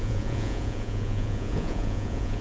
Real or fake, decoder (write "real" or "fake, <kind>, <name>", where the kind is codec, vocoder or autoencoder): fake, vocoder, Vocos